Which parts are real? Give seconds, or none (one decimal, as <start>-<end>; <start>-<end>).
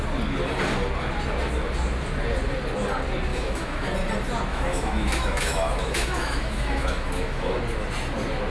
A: 0.0-3.3; 3.9-4.5; 7.6-8.5